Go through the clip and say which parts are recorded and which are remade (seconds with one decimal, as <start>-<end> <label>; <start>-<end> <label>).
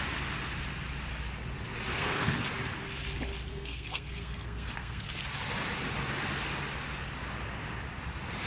0.0-1.9 recorded; 1.9-2.4 remade; 2.4-3.5 recorded; 3.5-5.1 remade; 5.1-8.5 recorded